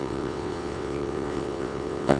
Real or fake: fake